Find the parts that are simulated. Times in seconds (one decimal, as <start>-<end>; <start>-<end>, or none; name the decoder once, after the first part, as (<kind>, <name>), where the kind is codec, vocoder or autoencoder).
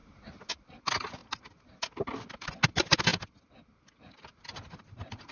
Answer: none